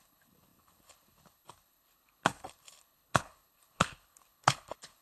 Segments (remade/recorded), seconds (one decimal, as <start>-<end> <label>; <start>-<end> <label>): 0.0-5.0 remade